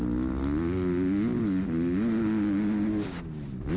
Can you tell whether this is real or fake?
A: real